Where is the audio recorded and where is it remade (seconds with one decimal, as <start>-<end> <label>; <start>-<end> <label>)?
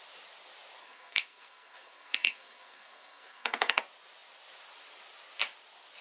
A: 0.0-0.8 recorded; 0.8-3.8 remade; 3.8-6.0 recorded